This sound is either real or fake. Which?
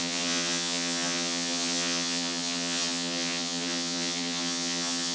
fake